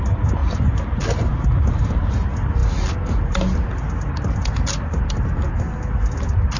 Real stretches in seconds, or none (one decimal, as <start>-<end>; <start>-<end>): 0.0-6.6